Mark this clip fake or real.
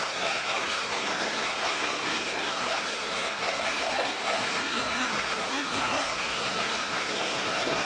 fake